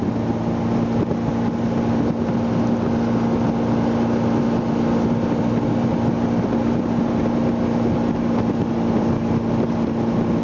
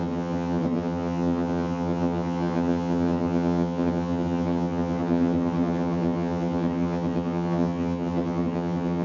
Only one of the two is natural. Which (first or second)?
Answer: first